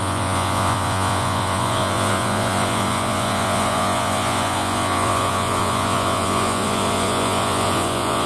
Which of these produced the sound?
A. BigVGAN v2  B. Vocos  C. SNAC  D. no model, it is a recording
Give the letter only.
B